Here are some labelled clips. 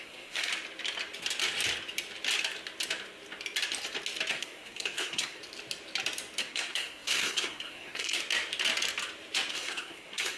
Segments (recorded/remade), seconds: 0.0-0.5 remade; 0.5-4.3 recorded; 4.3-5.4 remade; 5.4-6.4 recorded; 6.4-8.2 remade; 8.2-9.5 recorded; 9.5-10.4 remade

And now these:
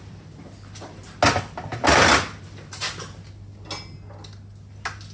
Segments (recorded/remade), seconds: 0.0-5.1 recorded

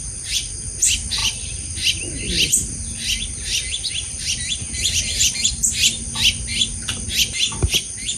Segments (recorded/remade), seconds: 0.0-8.2 recorded

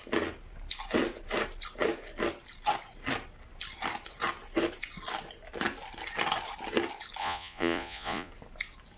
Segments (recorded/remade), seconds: 0.0-7.2 recorded; 7.2-8.3 remade; 8.3-9.0 recorded

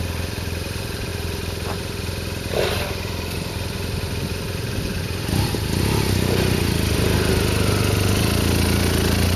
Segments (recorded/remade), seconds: 0.0-9.4 recorded

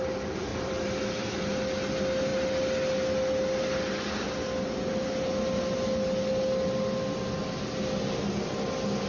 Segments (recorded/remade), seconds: 0.0-0.5 recorded; 0.5-1.3 remade; 1.3-9.1 recorded